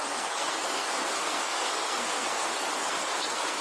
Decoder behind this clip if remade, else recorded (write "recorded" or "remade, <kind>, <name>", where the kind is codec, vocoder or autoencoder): remade, codec, SNAC